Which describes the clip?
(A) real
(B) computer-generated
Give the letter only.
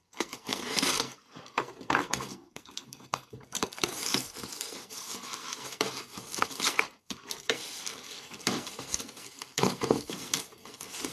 B